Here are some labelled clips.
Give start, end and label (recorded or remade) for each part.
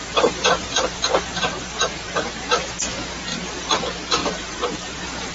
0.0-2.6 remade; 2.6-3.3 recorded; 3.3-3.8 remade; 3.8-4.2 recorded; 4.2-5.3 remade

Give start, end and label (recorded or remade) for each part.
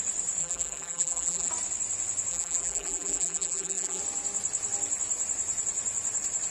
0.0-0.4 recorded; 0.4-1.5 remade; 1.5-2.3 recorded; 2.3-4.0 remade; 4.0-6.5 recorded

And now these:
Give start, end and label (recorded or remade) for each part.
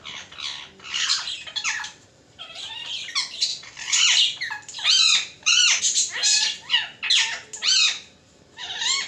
0.0-1.1 recorded; 1.1-2.7 remade; 2.7-3.5 recorded; 3.5-5.8 remade; 5.8-7.6 recorded; 7.6-9.1 remade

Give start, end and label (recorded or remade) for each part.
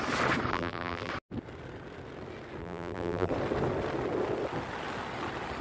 0.0-0.5 recorded; 0.5-1.1 remade; 1.1-2.6 recorded; 2.6-3.3 remade; 3.3-5.6 recorded